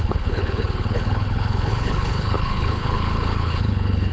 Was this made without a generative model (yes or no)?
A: no